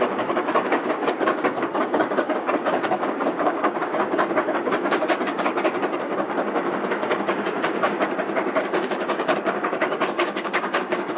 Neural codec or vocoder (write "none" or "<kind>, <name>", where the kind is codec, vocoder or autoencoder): codec, DAC